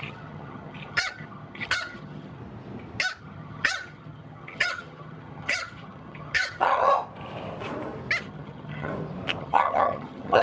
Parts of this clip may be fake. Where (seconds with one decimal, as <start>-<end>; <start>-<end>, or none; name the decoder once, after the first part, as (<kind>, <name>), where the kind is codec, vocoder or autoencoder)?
0.0-2.4 (vocoder, HiFi-GAN); 3.2-6.9; 8.2-8.9; 9.4-10.4